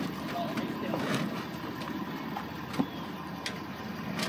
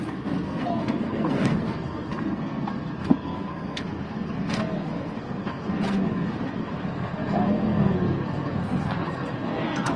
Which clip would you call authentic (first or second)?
first